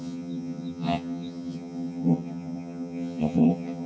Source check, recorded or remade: remade